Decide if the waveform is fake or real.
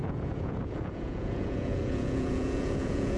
fake